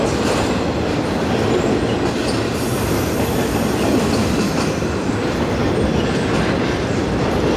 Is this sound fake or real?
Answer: real